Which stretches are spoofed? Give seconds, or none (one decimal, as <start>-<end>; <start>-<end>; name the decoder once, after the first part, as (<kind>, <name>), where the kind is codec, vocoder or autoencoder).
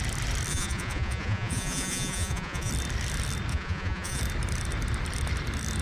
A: 0.5-2.7 (vocoder, Vocos); 3.5-4.2